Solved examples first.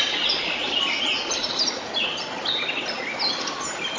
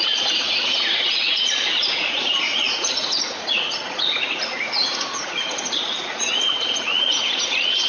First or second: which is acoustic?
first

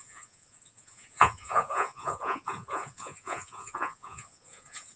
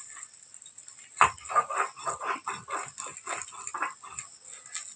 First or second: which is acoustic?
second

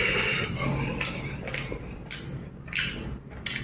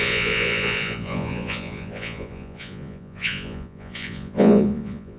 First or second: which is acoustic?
first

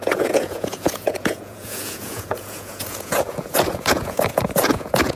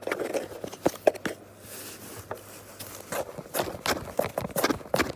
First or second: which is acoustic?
second